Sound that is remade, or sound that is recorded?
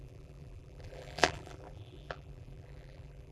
remade